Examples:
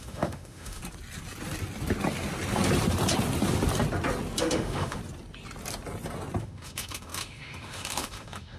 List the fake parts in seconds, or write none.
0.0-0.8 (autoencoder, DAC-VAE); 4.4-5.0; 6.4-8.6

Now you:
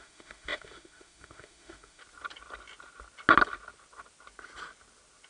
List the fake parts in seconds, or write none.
0.0-2.0 (autoencoder, DAC-VAE)

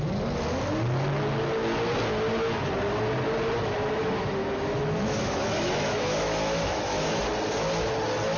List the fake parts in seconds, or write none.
4.0-7.3 (autoencoder, DAC-VAE)

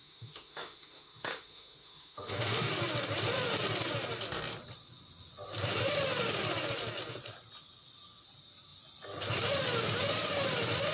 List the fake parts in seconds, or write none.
0.0-2.7 (autoencoder, DAC-VAE)

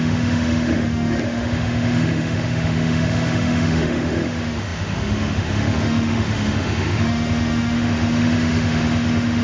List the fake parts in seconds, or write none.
0.0-9.4 (autoencoder, DAC-VAE)

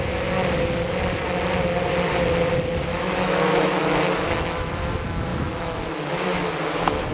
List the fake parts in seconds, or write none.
2.9-4.7 (autoencoder, DAC-VAE); 5.3-6.5